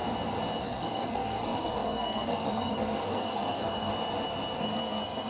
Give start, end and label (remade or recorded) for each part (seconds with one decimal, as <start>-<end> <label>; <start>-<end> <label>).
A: 0.0-0.6 recorded; 0.6-3.9 remade; 3.9-4.6 recorded; 4.6-5.3 remade